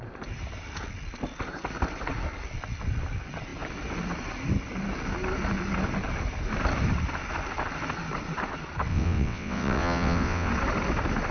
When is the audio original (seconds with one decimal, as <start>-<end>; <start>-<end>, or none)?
0.0-8.9; 10.5-11.3